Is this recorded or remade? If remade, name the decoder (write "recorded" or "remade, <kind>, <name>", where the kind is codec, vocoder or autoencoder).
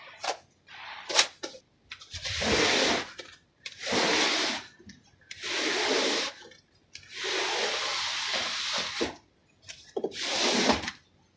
recorded